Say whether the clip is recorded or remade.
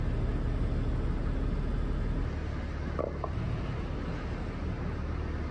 recorded